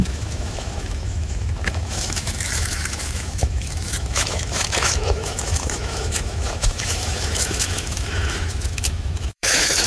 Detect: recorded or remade remade